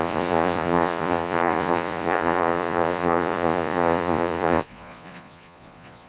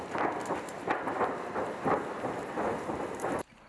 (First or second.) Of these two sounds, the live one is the second